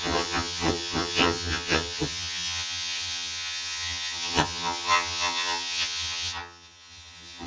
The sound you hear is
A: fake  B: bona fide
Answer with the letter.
A